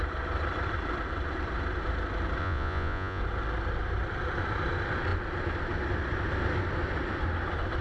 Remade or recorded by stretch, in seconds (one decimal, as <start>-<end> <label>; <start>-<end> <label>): 0.0-2.4 recorded; 2.4-3.2 remade; 3.2-7.8 recorded